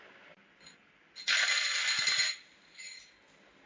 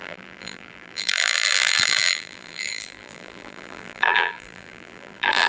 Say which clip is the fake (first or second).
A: second